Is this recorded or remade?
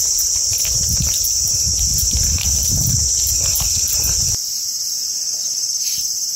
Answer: remade